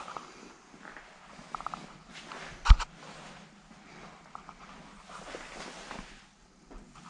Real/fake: real